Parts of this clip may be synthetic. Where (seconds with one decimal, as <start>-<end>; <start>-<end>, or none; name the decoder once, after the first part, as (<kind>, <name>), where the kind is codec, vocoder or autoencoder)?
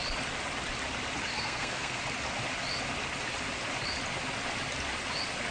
1.3-2.0 (codec, SNAC)